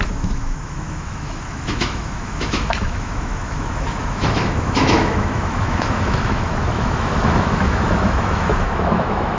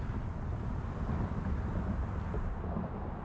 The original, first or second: second